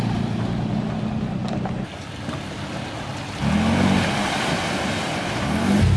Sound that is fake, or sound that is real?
real